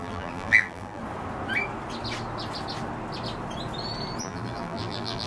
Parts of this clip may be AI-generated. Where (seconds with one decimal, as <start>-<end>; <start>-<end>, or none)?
0.0-1.0; 4.2-5.3